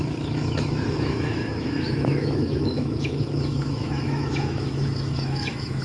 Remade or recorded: remade